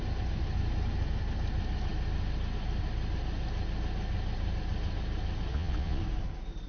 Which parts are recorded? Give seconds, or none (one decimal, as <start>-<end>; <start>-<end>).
0.0-5.5; 6.0-6.7